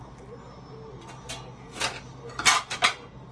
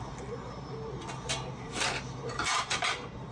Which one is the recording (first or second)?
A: first